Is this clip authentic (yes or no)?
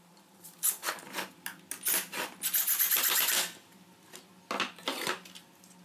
yes